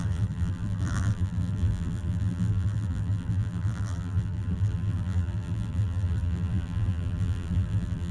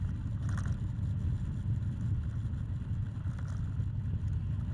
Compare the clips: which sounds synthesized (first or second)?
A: first